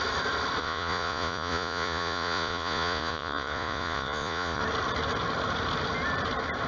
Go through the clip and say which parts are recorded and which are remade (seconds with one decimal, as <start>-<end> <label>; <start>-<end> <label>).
0.0-0.6 recorded; 0.6-4.6 remade; 4.6-6.7 recorded